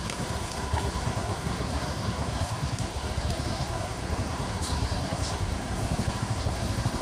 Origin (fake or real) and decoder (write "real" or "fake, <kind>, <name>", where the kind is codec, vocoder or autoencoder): fake, codec, SNAC